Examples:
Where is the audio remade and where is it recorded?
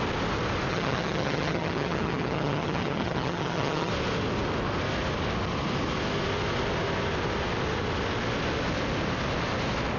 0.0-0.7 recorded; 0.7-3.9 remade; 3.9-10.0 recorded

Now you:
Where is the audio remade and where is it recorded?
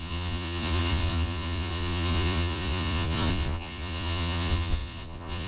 0.0-5.5 remade